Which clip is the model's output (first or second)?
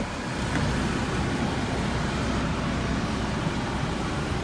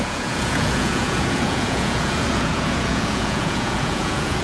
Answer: second